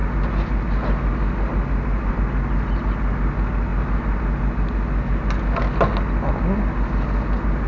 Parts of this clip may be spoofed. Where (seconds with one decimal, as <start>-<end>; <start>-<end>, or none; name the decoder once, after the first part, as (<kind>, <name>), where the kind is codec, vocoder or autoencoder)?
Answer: none